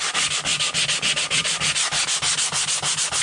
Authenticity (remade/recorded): recorded